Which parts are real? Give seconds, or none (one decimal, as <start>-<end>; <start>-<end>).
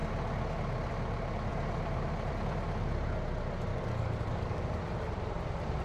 0.0-3.7; 4.8-5.8